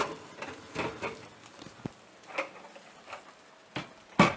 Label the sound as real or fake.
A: real